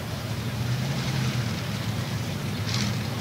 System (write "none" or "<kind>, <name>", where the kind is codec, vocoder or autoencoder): vocoder, BigVGAN v2